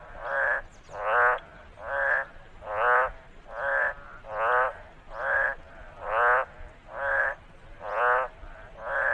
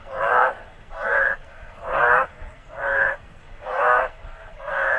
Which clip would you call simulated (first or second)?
second